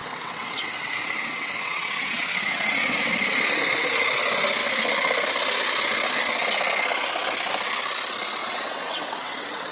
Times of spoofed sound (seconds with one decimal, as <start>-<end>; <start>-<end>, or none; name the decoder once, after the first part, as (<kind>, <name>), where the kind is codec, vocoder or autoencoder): 0.0-3.1 (vocoder, WaveNeXt); 8.4-9.7